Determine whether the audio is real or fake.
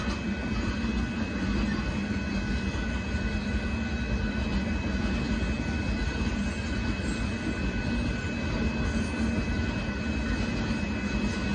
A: real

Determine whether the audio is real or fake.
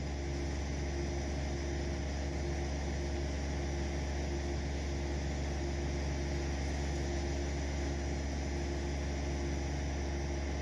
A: real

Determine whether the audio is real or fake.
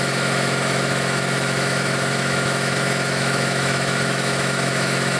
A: fake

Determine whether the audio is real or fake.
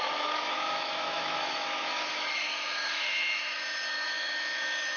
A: fake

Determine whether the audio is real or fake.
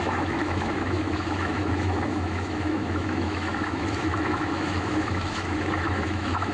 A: fake